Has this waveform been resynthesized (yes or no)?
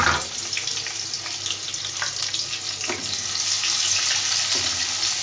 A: no